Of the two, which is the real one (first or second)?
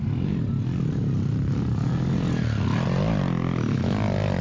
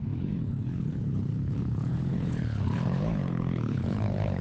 first